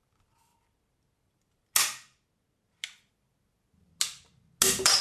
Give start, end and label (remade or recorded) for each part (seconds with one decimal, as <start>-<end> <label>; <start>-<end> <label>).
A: 0.0-0.5 remade; 0.5-3.1 recorded; 3.1-3.9 remade; 3.9-5.0 recorded

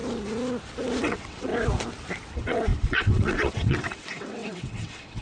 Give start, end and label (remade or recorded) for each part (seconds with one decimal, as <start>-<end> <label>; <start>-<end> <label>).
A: 0.0-1.0 recorded; 1.0-1.5 remade; 1.5-2.3 recorded; 2.3-5.2 remade

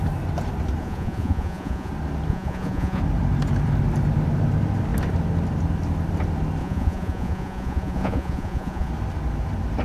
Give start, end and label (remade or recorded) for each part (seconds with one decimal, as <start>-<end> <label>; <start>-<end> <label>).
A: 0.0-0.8 recorded; 0.8-1.9 remade; 1.9-2.3 recorded; 2.3-3.0 remade; 3.0-6.6 recorded; 6.6-8.9 remade; 8.9-9.8 recorded

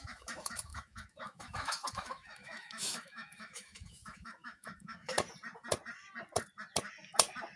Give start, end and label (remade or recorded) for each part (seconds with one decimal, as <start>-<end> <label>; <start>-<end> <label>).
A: 0.0-5.1 remade; 5.1-7.6 recorded

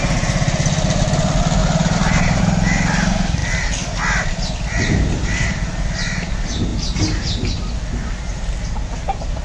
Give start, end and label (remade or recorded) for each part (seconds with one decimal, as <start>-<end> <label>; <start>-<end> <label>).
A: 0.0-1.6 recorded; 1.6-2.4 remade; 2.4-9.4 recorded

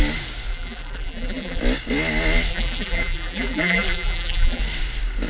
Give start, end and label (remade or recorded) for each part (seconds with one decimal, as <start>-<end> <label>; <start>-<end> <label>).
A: 0.0-0.5 recorded; 0.5-1.6 remade; 1.6-2.5 recorded; 2.5-4.6 remade; 4.6-5.3 recorded